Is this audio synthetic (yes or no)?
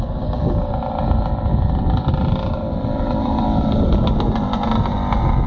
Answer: no